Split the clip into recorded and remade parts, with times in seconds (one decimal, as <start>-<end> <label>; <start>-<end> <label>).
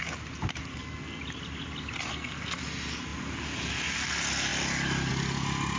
0.0-0.7 recorded; 0.7-1.2 remade; 1.2-2.1 recorded; 2.1-2.6 remade; 2.6-5.8 recorded